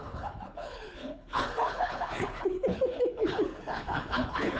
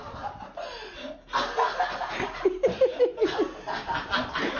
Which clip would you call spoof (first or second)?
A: first